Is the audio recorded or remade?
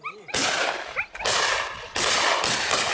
recorded